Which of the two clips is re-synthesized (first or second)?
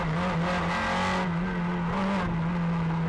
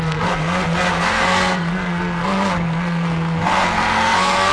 second